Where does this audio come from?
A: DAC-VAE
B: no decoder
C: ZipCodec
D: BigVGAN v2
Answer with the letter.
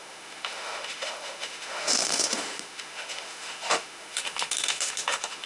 A